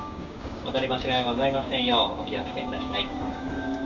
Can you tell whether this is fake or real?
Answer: fake